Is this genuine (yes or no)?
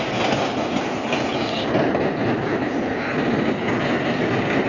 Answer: yes